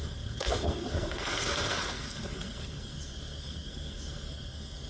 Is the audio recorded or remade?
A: remade